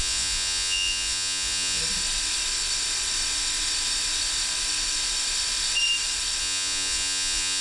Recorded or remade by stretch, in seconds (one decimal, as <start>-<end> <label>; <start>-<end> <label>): 0.0-1.8 remade; 1.8-6.4 recorded; 6.4-7.6 remade